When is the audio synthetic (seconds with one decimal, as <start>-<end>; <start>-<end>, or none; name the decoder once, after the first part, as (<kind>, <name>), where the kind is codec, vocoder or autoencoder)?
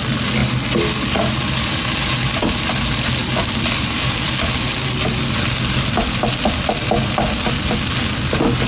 none